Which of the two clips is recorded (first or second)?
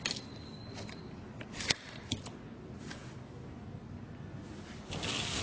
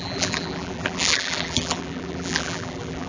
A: first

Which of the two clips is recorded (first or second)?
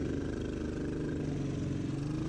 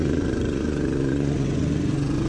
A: first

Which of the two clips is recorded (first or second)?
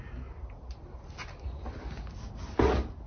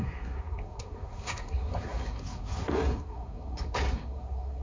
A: first